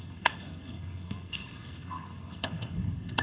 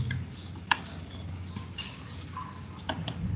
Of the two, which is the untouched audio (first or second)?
second